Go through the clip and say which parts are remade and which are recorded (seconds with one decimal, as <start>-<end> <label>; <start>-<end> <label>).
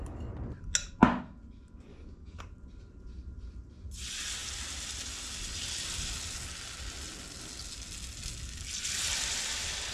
0.0-1.9 recorded; 1.9-2.4 remade; 2.4-9.9 recorded